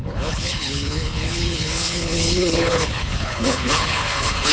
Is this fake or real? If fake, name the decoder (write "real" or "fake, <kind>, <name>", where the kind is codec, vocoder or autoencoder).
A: fake, codec, HILCodec